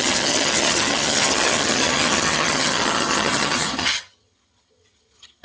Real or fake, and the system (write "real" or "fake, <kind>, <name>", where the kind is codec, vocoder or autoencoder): fake, vocoder, HiFi-GAN